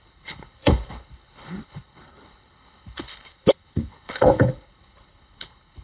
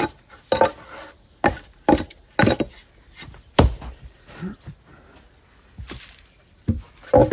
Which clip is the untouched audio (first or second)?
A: second